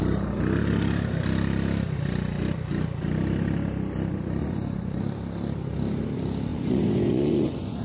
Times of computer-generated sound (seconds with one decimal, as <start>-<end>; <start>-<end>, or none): 4.4-5.0; 6.5-7.8